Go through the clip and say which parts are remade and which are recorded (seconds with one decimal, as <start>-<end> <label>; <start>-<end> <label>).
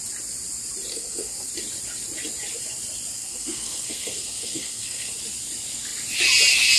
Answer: 0.0-0.9 recorded; 0.9-1.5 remade; 1.5-3.1 recorded; 3.1-5.1 remade; 5.1-6.8 recorded